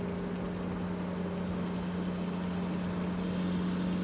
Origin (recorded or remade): recorded